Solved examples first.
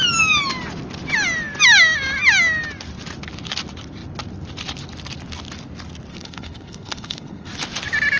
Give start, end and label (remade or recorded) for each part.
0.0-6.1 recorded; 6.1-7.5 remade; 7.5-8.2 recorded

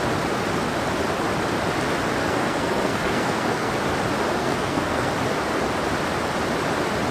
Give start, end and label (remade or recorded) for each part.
0.0-2.2 recorded; 2.2-3.7 remade; 3.7-4.4 recorded; 4.4-5.1 remade; 5.1-7.1 recorded

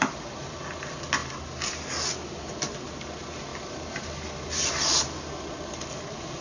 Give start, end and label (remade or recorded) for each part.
0.0-3.5 recorded; 3.5-5.4 remade; 5.4-6.4 recorded

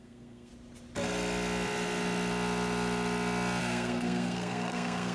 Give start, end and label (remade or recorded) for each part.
0.0-0.5 remade; 0.5-3.6 recorded; 3.6-5.1 remade

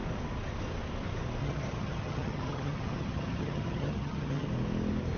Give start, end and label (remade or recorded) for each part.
0.0-1.4 recorded; 1.4-4.5 remade; 4.5-5.2 recorded